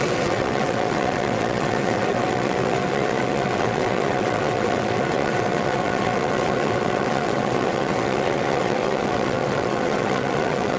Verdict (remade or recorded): remade